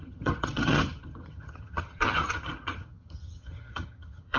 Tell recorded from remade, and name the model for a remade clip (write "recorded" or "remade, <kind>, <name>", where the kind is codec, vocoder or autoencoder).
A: remade, vocoder, HiFi-GAN